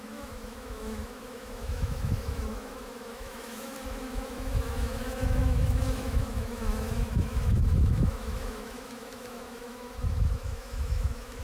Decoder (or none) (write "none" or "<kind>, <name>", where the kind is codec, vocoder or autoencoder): autoencoder, DAC-VAE